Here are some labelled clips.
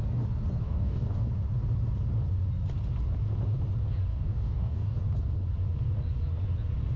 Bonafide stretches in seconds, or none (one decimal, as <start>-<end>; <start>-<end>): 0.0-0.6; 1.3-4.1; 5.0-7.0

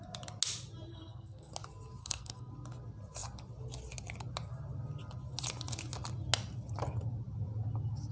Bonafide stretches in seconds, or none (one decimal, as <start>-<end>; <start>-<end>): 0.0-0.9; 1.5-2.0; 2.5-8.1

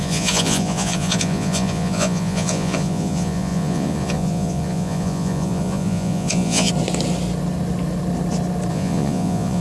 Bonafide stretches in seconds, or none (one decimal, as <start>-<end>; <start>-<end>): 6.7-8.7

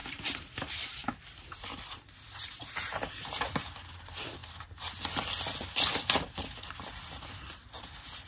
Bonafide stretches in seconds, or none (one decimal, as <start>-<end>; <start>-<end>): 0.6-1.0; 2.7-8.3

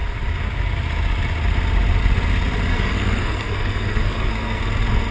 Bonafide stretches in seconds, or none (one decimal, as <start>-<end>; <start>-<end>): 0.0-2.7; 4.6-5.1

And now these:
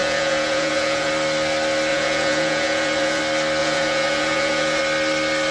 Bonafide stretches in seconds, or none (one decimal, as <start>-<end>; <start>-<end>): 1.1-1.9; 3.2-3.6; 4.8-5.5

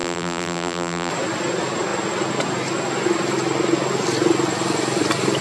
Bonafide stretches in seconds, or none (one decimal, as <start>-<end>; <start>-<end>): 1.1-5.4

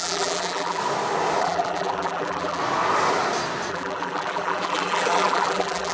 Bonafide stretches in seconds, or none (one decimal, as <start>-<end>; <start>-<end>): 0.8-1.4; 2.6-3.7